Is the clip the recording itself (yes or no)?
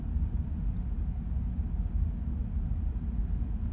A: yes